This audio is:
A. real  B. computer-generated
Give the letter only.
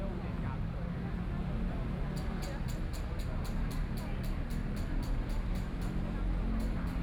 A